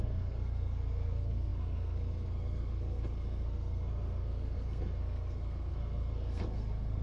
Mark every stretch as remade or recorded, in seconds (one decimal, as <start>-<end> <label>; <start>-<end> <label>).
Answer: 0.0-7.0 remade